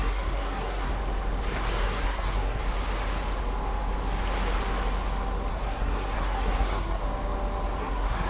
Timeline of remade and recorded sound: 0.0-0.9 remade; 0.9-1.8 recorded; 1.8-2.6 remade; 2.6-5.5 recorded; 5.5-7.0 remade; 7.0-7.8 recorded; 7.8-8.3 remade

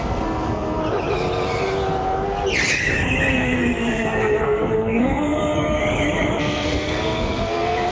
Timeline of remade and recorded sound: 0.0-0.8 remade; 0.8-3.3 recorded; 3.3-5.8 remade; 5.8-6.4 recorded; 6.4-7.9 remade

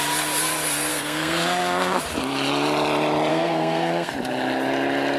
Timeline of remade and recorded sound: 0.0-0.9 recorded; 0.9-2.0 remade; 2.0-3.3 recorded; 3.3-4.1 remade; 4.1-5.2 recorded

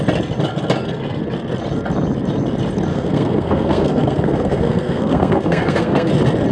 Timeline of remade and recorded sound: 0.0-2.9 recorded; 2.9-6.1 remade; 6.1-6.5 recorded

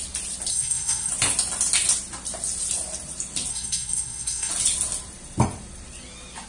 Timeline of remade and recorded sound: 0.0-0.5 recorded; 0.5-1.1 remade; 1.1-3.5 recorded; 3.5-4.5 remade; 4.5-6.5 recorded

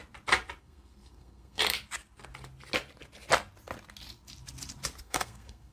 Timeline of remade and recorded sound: 0.0-0.6 recorded; 0.6-1.6 remade; 1.6-5.0 recorded; 5.0-5.7 remade

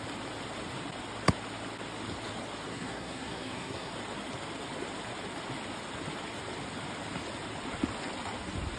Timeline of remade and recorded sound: 0.0-2.7 recorded; 2.7-3.9 remade; 3.9-8.8 recorded